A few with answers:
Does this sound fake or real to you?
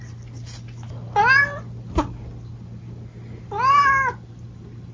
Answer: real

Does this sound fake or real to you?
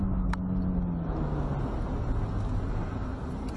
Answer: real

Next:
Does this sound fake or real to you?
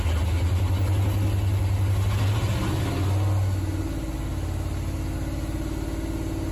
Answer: real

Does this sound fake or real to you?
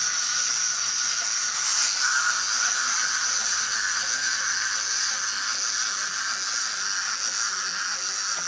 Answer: real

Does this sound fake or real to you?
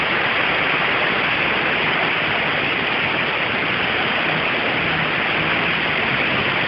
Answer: real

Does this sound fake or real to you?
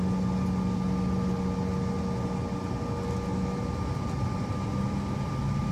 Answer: real